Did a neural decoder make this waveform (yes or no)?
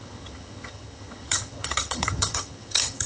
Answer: yes